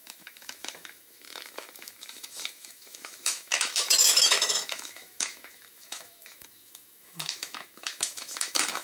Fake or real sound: fake